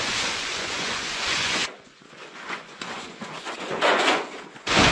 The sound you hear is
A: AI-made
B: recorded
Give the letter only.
A